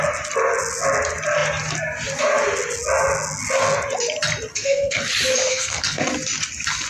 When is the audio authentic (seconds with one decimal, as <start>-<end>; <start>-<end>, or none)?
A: 0.0-4.5; 5.0-5.5; 6.0-6.9

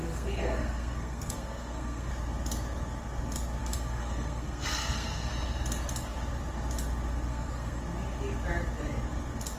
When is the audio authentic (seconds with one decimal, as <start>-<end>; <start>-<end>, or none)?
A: 2.1-3.6; 5.3-7.3; 7.8-9.6

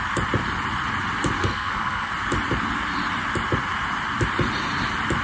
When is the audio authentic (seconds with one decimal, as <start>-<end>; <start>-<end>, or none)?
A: 0.0-1.4; 2.1-5.2

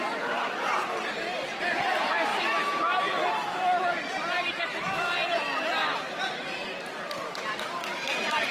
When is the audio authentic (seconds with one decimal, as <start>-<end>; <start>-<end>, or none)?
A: 0.0-8.5

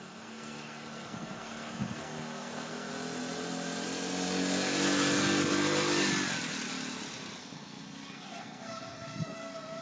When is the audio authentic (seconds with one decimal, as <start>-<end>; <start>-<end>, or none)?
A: 2.9-7.4

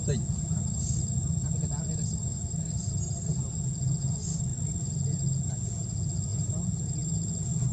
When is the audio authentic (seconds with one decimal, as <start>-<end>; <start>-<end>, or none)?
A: 0.0-7.7